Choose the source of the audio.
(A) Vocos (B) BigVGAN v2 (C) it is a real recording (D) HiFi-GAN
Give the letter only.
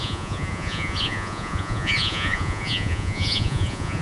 A